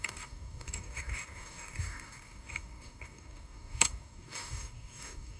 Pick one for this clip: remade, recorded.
remade